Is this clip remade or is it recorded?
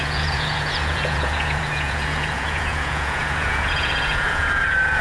remade